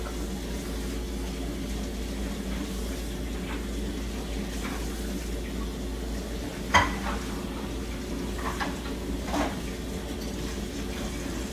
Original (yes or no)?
yes